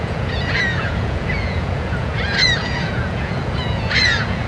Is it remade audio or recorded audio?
remade